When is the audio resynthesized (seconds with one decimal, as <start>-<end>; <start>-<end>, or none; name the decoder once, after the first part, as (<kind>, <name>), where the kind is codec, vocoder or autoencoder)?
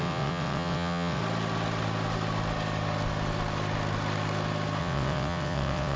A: 0.0-1.2 (vocoder, WaveNeXt); 4.8-6.0